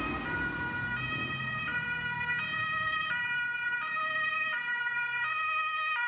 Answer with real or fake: real